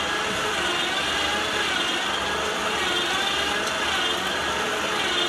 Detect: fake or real real